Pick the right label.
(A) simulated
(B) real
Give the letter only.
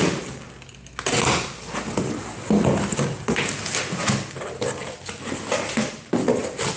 B